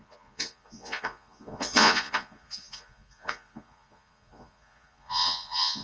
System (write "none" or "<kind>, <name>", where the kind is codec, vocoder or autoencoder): vocoder, Vocos